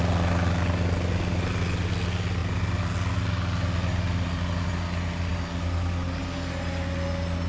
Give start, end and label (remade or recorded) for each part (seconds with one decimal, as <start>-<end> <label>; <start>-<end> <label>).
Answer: 0.0-7.5 recorded